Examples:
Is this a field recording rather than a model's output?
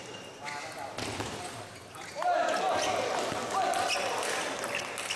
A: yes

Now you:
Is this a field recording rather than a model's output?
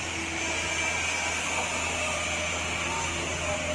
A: yes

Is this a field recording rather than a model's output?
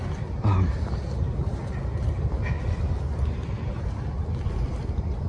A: yes